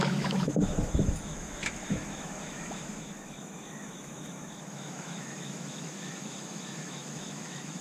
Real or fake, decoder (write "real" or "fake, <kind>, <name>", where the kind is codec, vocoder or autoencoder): fake, autoencoder, DAC-VAE